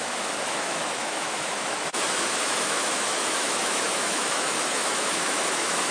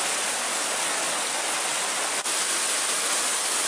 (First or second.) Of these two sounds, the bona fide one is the second